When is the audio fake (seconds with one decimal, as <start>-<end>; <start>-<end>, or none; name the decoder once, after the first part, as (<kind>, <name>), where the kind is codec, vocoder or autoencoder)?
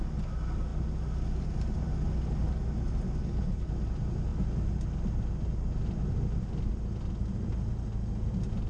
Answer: 3.2-3.7 (codec, HILCodec)